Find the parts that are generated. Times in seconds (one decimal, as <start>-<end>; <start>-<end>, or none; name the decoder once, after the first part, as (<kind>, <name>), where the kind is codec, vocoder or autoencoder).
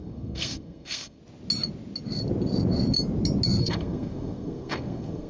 0.0-1.2 (codec, SNAC); 3.6-5.3